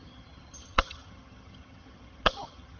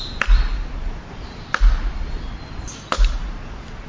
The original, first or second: second